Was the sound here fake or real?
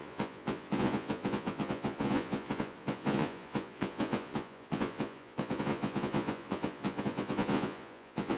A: fake